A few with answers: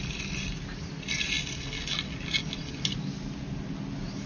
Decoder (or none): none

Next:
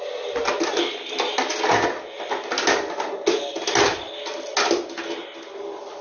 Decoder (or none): none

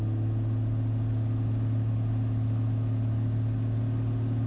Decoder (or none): none